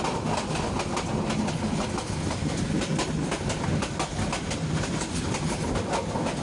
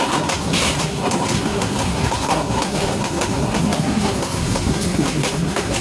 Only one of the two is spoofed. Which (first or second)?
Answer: second